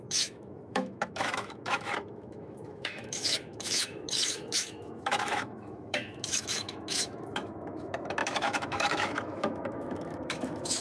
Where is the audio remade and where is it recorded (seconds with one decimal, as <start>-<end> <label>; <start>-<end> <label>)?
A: 0.0-10.8 remade

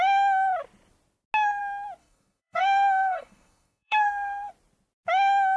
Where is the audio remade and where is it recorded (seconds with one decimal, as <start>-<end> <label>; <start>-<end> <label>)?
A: 0.0-2.0 recorded; 2.0-4.5 remade; 4.5-5.6 recorded

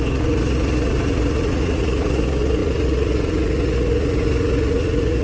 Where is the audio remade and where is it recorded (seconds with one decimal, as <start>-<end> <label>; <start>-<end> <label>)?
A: 0.0-5.2 remade